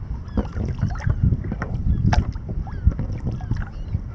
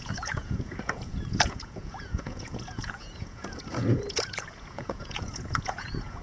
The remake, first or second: second